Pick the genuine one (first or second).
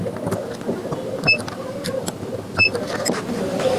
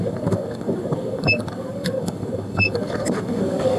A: first